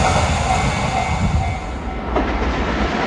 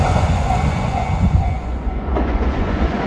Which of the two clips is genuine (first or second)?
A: first